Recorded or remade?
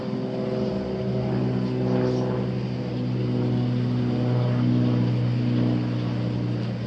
recorded